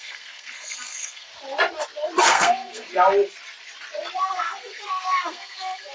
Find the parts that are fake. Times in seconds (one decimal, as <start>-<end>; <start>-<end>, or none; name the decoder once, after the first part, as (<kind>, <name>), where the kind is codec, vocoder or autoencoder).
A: 0.0-1.3 (codec, SNAC); 2.2-2.9; 4.2-5.9

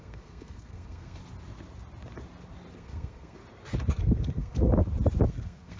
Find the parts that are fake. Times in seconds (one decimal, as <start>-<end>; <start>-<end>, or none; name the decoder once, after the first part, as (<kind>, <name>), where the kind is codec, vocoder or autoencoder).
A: 0.0-1.2 (codec, SNAC); 2.7-3.4; 3.9-4.7; 5.3-5.8

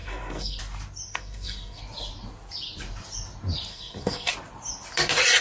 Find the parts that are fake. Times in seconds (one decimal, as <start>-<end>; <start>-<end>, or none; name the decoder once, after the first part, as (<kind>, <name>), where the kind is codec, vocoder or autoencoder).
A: 0.0-0.6 (codec, SNAC); 1.1-1.8; 3.7-4.3

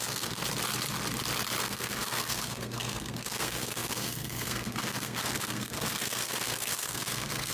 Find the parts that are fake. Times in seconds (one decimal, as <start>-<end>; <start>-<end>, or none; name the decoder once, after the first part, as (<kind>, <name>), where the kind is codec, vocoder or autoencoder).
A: 0.0-0.4 (codec, SNAC); 1.6-7.5

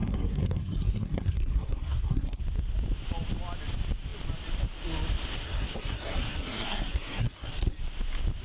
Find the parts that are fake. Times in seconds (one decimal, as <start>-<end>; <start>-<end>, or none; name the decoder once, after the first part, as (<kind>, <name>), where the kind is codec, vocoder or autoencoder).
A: 0.0-2.4 (codec, SNAC); 5.4-7.8